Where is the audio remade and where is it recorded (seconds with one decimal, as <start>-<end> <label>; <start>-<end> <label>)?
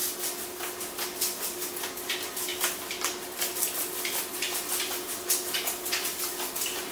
0.0-6.9 recorded